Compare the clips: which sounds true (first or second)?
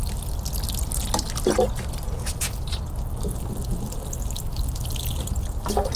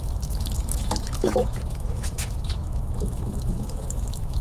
first